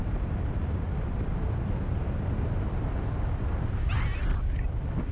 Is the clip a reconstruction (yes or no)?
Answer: no